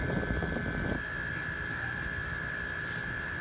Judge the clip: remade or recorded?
recorded